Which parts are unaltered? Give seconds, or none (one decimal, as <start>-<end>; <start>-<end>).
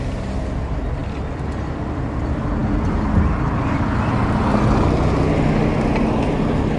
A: 0.0-6.8